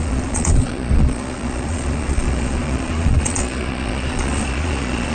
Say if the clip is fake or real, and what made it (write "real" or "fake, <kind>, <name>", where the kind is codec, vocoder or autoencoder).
fake, vocoder, Vocos